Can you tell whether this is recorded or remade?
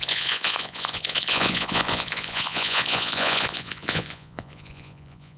remade